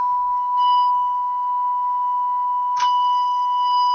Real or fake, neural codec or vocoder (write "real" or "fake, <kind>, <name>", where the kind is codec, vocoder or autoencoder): fake, codec, SNAC